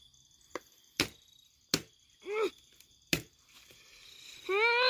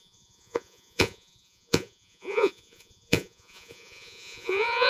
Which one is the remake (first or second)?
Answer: second